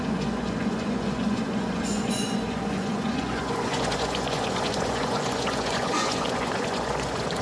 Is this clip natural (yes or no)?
no